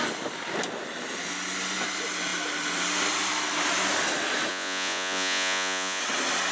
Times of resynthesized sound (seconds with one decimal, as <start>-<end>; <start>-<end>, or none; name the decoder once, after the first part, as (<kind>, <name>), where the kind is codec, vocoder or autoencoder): 4.5-6.0 (vocoder, Vocos)